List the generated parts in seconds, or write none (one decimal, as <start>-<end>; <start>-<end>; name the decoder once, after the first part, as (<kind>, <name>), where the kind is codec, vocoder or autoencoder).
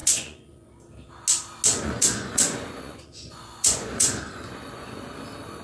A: 0.0-0.7 (vocoder, Vocos); 1.7-5.1